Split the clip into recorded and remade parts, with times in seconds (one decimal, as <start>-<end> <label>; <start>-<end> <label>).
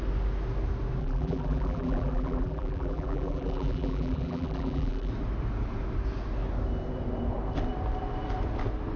0.0-1.0 recorded; 1.0-5.1 remade; 5.1-9.0 recorded